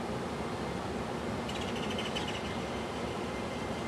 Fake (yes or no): no